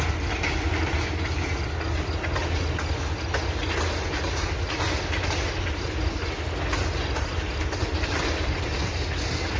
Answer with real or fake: real